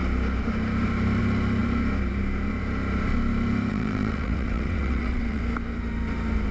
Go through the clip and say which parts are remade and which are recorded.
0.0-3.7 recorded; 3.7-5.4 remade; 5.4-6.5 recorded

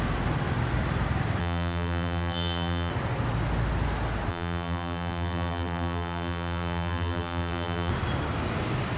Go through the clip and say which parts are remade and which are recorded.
0.0-1.4 recorded; 1.4-2.9 remade; 2.9-4.3 recorded; 4.3-7.9 remade; 7.9-9.0 recorded

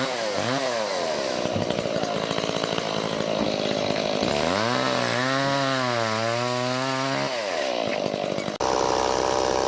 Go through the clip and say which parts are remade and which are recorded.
0.0-9.7 recorded

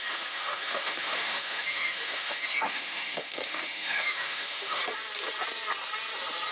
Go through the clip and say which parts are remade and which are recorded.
0.0-4.8 remade; 4.8-6.5 recorded